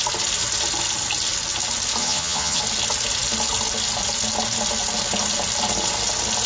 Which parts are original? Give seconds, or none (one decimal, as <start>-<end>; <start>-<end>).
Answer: 0.0-2.0; 2.6-6.5